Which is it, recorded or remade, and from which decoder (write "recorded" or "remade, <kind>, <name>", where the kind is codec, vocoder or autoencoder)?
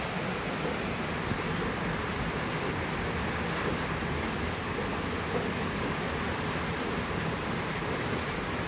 recorded